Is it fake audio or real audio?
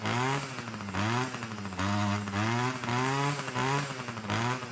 real